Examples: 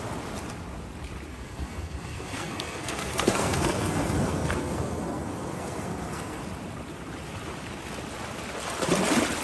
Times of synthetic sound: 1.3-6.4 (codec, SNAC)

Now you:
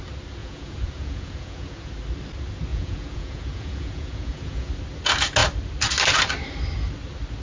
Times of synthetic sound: 0.4-1.9 (vocoder, Vocos); 2.7-4.7

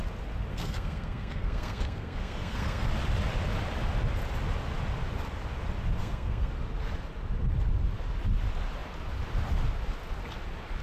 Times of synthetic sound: 0.5-2.9 (codec, SNAC); 6.0-6.5

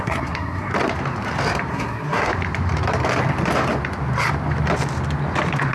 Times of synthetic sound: 0.0-0.7 (codec, SNAC); 1.7-2.3

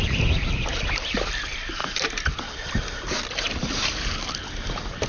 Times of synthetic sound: none

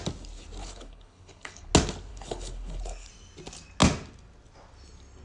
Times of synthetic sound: 0.6-1.7 (codec, HILCodec); 2.1-3.1

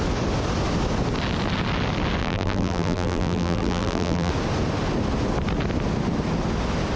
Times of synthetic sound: 2.2-4.3 (vocoder, BigVGAN v2)